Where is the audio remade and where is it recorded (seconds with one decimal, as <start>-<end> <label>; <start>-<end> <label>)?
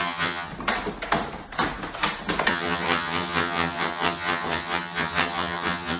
0.0-0.5 remade; 0.5-2.5 recorded; 2.5-6.0 remade